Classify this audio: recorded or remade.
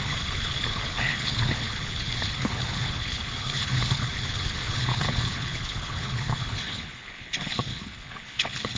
remade